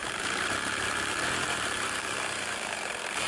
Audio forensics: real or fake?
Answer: fake